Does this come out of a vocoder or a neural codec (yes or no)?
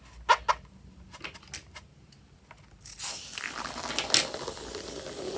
no